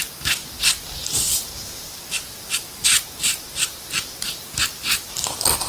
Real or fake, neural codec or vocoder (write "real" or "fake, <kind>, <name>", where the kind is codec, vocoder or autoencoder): fake, vocoder, BigVGAN v2